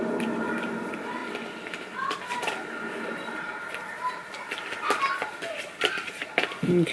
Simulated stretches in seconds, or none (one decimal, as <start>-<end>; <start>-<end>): none